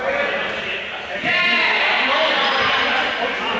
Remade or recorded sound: recorded